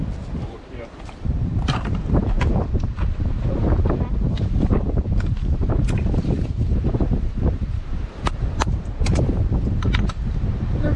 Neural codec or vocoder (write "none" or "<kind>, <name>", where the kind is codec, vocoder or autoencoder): vocoder, BigVGAN v2